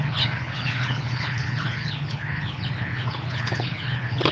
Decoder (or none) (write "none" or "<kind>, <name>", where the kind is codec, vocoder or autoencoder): codec, HILCodec